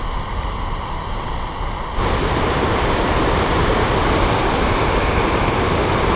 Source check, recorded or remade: remade